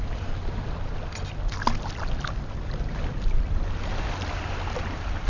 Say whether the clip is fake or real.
real